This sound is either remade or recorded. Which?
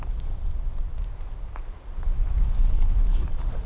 recorded